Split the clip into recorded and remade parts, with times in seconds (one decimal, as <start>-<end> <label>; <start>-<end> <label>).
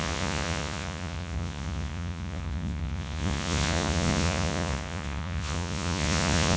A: 0.0-6.6 remade